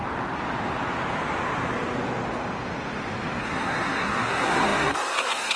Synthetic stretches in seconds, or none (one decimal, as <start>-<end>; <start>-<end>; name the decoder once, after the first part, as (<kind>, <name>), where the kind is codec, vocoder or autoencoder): 3.4-5.6 (codec, SNAC)